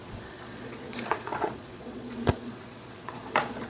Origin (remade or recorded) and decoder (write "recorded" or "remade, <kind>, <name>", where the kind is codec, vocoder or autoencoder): remade, vocoder, Vocos